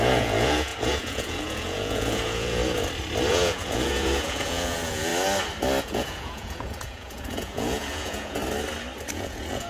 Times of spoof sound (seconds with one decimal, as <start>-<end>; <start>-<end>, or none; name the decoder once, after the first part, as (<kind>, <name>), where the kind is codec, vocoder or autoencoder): 0.0-2.6 (vocoder, Vocos); 3.3-5.1; 5.8-8.4; 9.1-9.7